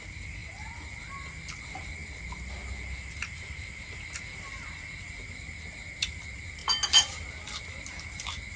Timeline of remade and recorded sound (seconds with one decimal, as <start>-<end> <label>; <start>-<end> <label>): 0.0-8.6 recorded